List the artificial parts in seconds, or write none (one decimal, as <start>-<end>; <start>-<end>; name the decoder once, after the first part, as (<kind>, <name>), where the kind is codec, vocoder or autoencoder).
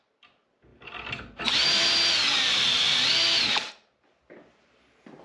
0.7-3.7 (vocoder, BigVGAN v2)